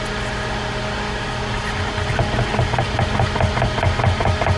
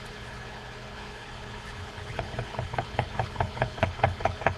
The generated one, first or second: second